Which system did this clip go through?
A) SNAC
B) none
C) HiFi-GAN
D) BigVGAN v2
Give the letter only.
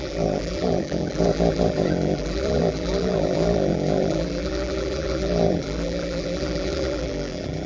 D